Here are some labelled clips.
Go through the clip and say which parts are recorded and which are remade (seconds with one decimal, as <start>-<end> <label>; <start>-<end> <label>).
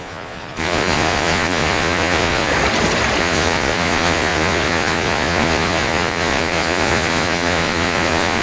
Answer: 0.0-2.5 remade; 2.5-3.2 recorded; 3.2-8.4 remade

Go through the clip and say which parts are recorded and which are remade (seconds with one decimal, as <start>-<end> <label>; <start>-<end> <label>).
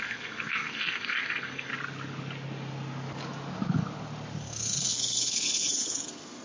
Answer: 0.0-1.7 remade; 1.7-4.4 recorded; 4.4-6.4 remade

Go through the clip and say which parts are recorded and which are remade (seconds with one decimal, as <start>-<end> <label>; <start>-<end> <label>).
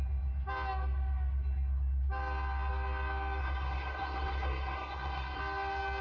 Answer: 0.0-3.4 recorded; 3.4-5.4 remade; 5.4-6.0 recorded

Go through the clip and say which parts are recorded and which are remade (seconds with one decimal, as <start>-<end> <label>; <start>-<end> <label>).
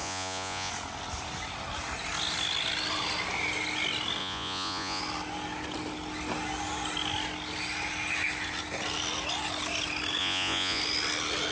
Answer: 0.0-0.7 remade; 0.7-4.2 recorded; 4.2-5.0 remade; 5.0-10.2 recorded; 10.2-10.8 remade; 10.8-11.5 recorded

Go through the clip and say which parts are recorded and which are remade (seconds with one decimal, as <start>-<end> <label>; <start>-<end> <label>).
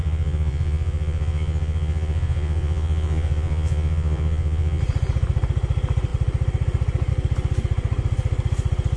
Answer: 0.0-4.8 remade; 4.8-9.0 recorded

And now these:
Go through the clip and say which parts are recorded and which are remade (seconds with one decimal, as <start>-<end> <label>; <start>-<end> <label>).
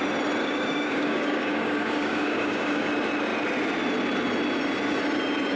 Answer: 0.0-0.4 recorded; 0.4-2.9 remade; 2.9-5.6 recorded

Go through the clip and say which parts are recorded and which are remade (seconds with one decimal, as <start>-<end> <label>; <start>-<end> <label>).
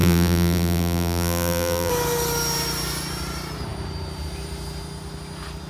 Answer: 0.0-1.9 remade; 1.9-5.7 recorded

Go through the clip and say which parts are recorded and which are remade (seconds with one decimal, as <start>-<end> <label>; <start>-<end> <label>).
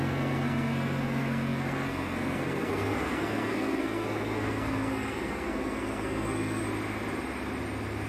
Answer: 0.0-6.6 remade; 6.6-8.1 recorded